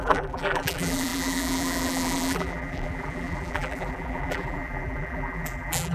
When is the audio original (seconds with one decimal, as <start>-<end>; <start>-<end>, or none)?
none